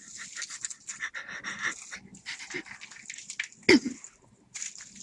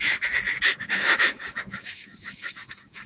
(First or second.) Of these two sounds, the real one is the first